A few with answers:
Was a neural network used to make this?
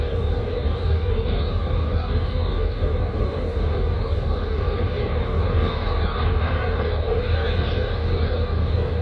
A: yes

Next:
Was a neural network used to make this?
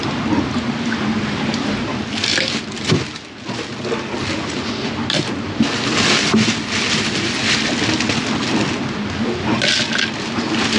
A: no